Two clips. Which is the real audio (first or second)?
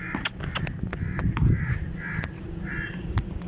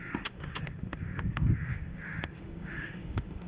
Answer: first